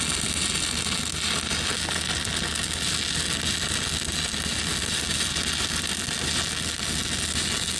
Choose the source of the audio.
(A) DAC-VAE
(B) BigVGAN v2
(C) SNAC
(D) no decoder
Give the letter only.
D